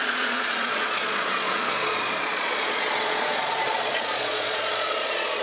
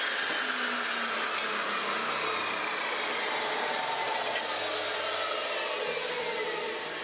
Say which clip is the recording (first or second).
second